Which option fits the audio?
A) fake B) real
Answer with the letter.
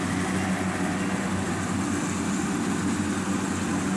B